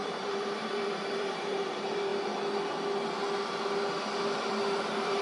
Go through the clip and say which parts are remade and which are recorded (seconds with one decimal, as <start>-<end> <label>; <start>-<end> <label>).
0.0-2.1 remade; 2.1-4.5 recorded; 4.5-5.2 remade